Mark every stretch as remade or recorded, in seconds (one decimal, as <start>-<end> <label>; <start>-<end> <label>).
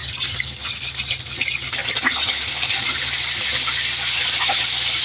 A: 0.0-5.0 recorded